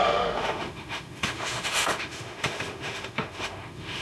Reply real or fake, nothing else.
fake